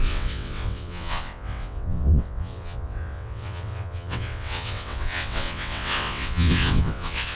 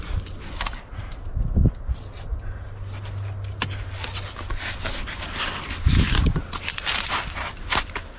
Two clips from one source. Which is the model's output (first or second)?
first